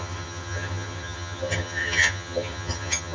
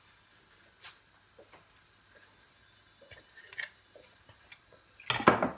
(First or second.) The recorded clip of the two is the second